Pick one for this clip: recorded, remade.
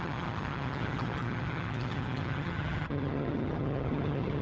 remade